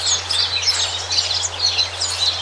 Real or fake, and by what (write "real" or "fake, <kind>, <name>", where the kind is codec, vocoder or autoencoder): real